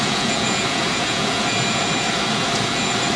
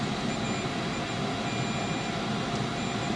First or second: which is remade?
first